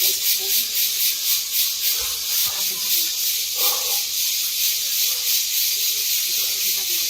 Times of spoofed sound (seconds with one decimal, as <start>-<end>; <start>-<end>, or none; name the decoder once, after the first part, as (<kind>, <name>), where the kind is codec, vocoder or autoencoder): none